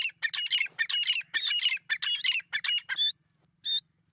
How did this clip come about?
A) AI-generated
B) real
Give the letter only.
B